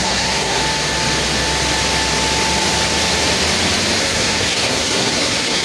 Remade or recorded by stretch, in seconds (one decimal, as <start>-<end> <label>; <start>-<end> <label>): 0.0-0.6 remade; 0.6-4.0 recorded; 4.0-5.6 remade